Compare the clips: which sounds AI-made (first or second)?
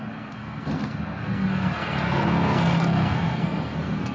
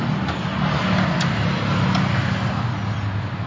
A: first